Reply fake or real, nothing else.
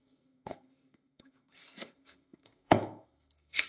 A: fake